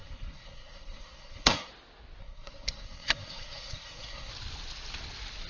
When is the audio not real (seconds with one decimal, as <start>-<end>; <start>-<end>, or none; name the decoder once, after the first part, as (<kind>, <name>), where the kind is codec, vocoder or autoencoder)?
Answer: 0.0-1.7 (codec, SNAC); 2.2-4.3